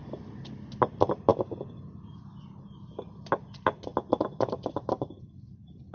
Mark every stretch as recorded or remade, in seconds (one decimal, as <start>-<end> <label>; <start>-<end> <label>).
0.0-3.9 recorded; 3.9-5.1 remade; 5.1-5.9 recorded